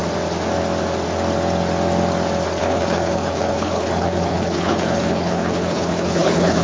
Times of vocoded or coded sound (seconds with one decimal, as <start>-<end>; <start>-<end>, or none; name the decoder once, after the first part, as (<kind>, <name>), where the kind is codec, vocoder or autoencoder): 2.6-6.6 (codec, HILCodec)